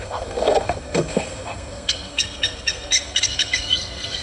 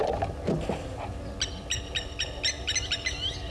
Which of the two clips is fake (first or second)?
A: first